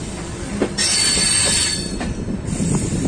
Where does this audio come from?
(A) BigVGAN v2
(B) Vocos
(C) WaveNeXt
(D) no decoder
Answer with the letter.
D